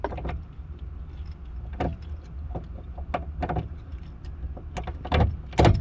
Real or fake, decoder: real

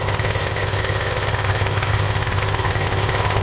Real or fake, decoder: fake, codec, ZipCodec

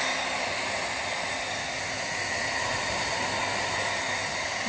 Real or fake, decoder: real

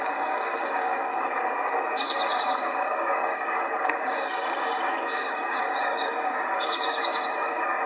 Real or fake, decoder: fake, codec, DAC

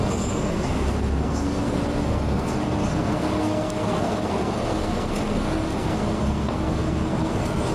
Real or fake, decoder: fake, codec, SNAC